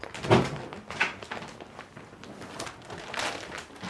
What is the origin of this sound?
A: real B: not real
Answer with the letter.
A